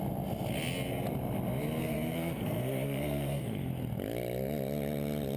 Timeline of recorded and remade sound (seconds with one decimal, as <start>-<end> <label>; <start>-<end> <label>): 0.0-1.8 recorded; 1.8-3.7 remade; 3.7-5.4 recorded